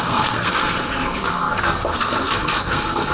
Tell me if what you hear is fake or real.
fake